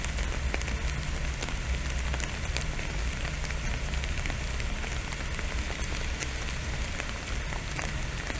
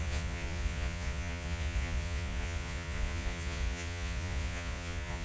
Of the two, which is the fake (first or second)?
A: second